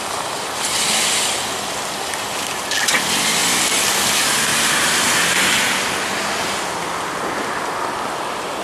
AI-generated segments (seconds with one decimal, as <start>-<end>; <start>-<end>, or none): 4.5-5.1